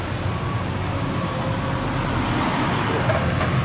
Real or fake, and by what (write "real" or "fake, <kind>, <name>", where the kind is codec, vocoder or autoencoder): real